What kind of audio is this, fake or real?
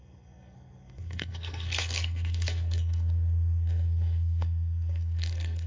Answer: fake